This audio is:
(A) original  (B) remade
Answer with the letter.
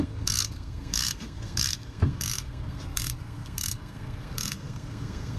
B